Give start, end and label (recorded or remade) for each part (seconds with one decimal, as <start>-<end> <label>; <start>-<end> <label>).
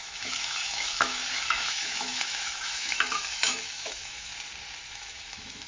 0.0-4.3 remade; 4.3-4.9 recorded; 4.9-5.7 remade